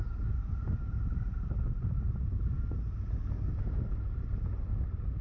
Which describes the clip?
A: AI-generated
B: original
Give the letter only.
B